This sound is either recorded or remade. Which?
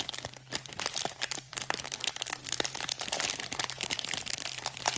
remade